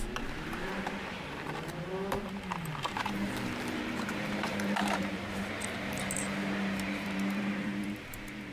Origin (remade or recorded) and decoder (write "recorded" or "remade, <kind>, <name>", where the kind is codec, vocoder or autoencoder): remade, vocoder, BigVGAN v2